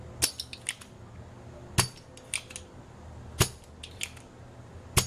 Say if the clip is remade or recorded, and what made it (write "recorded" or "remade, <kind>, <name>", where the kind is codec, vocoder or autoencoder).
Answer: recorded